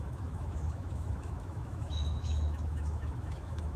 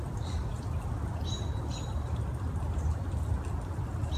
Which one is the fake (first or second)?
first